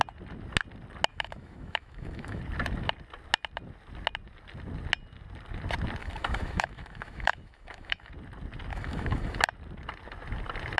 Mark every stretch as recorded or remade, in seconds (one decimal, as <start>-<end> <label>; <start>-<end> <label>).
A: 0.0-1.1 recorded; 1.1-2.4 remade; 2.4-6.0 recorded; 6.0-8.1 remade; 8.1-8.7 recorded; 8.7-9.4 remade; 9.4-10.8 recorded